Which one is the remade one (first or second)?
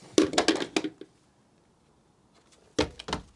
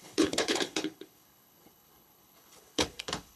second